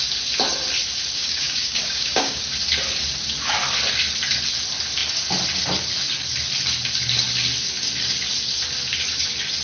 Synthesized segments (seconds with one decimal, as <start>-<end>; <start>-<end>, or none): 1.2-2.4